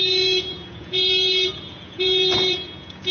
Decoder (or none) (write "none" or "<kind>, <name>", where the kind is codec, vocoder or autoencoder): vocoder, Vocos